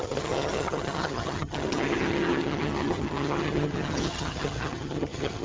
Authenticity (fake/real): fake